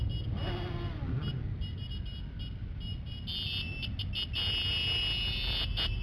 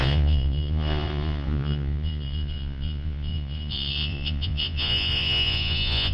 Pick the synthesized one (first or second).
second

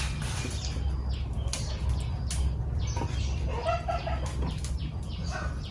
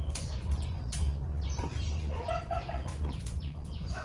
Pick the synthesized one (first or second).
second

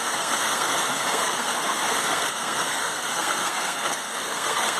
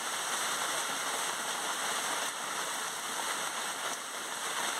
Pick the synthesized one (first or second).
first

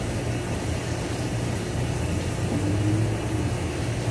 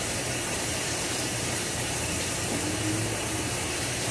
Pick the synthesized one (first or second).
second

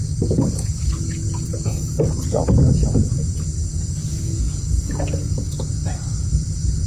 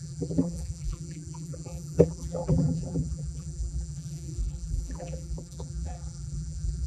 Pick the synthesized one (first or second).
second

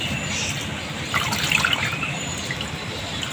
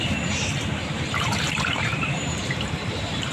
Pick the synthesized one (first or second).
second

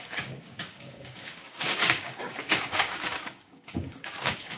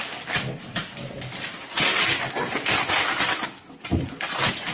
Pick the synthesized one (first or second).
first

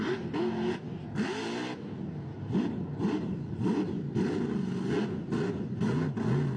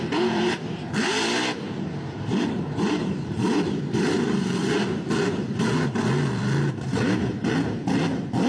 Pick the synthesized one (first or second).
second